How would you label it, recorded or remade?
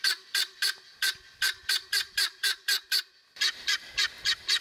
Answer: remade